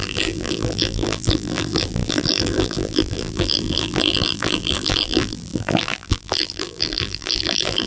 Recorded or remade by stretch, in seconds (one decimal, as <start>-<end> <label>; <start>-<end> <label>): 0.0-7.9 remade